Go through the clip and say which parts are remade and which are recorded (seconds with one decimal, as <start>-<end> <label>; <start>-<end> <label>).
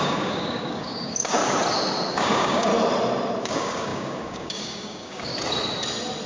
0.0-1.4 remade; 1.4-2.1 recorded; 2.1-2.7 remade; 2.7-3.4 recorded; 3.4-5.3 remade; 5.3-6.3 recorded